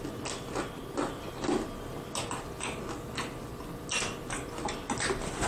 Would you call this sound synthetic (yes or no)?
no